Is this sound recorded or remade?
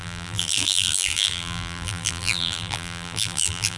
remade